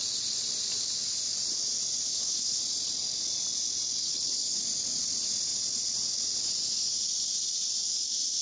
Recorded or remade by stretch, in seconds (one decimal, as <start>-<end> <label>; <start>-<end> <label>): 0.0-2.1 recorded; 2.1-2.6 remade; 2.6-4.0 recorded; 4.0-4.6 remade; 4.6-8.4 recorded